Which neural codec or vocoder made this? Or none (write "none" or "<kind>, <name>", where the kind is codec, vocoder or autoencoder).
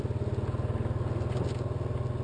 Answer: none